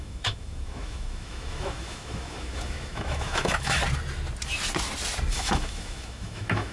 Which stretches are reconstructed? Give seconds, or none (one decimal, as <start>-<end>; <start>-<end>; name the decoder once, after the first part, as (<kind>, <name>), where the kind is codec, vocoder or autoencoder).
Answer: 0.0-3.8 (autoencoder, DAC-VAE); 5.3-6.7